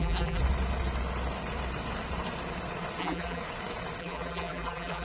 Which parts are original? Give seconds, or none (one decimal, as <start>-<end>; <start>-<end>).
0.4-3.0; 3.4-4.0